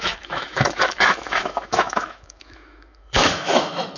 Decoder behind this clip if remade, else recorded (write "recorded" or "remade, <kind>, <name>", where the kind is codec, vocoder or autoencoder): remade, autoencoder, DAC-VAE